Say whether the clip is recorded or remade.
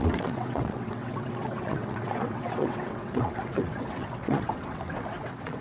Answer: remade